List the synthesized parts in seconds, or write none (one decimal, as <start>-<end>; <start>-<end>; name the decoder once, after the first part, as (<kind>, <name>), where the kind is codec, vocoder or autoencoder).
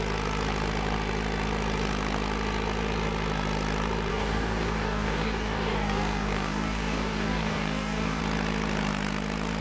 4.1-8.2 (codec, DAC)